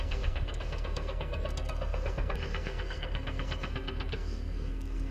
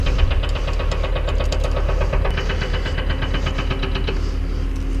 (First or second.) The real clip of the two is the second